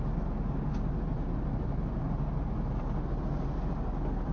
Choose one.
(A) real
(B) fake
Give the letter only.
A